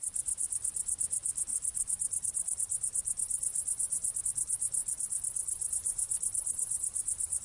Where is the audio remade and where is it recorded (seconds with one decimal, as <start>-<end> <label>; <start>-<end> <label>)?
0.0-4.8 remade; 4.8-5.7 recorded; 5.7-7.4 remade